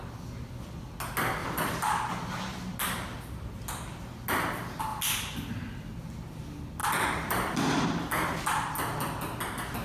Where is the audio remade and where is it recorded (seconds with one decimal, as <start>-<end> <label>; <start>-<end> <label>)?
0.0-1.4 recorded; 1.4-2.4 remade; 2.4-4.9 recorded; 4.9-5.9 remade; 5.9-6.8 recorded; 6.8-8.4 remade; 8.4-9.8 recorded

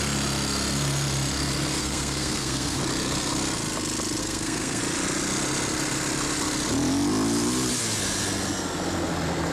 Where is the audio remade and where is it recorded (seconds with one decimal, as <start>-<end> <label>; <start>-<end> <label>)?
0.0-1.8 recorded; 1.8-2.8 remade; 2.8-4.2 recorded; 4.2-4.8 remade; 4.8-9.5 recorded

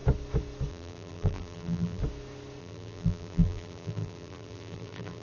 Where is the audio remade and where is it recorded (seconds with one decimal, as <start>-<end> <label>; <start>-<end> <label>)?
0.0-0.7 recorded; 0.7-2.0 remade; 2.0-2.6 recorded; 2.6-5.2 remade